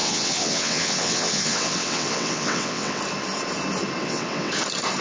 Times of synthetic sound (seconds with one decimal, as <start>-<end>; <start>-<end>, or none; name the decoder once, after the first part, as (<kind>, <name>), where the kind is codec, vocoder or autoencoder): 0.0-3.0 (vocoder, WaveNeXt); 4.0-4.5